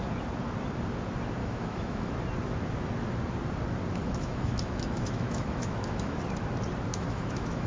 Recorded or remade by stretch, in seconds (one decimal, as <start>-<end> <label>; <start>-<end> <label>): 0.0-1.4 recorded; 1.4-2.1 remade; 2.1-4.0 recorded; 4.0-6.2 remade; 6.2-6.9 recorded; 6.9-7.7 remade